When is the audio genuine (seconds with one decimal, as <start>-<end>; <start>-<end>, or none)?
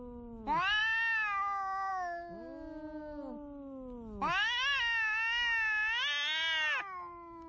0.0-7.5